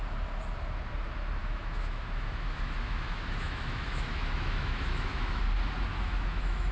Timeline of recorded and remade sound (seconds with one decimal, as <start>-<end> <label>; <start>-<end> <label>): 0.0-1.4 recorded; 1.4-5.4 remade; 5.4-5.9 recorded; 5.9-6.7 remade